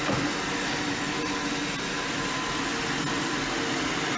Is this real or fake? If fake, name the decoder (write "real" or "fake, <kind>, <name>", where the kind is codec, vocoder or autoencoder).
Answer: real